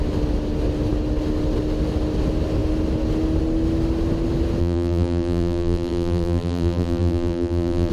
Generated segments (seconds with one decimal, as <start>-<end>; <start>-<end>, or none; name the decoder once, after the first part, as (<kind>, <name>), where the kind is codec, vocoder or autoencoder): 4.6-7.9 (vocoder, BigVGAN v2)